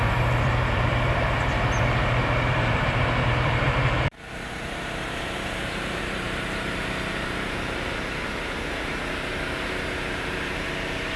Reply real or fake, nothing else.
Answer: fake